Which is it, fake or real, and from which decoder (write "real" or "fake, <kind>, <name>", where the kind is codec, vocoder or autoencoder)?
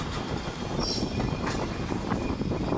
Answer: real